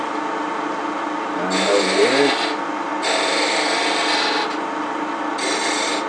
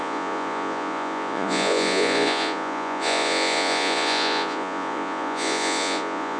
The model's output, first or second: second